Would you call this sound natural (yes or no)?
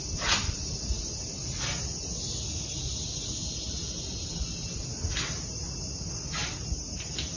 yes